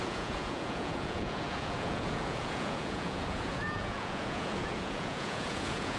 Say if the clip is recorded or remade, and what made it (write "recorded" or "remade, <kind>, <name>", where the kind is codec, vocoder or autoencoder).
remade, vocoder, Vocos